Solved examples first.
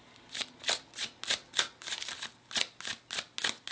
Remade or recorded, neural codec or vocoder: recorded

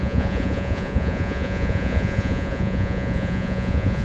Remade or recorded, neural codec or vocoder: remade, vocoder, Vocos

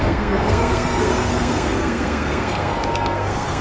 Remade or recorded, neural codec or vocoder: remade, codec, SNAC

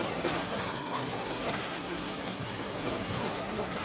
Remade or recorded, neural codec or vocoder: remade, codec, SNAC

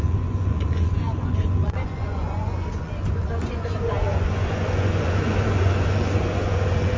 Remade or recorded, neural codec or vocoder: remade, vocoder, Vocos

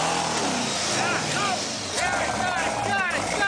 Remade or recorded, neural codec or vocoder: recorded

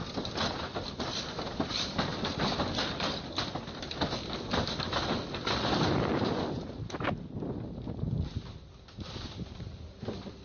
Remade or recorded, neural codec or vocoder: recorded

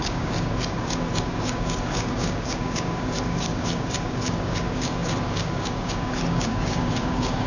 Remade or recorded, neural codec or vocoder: remade, codec, DAC